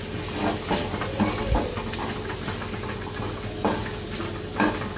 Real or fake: real